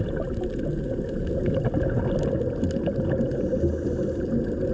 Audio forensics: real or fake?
real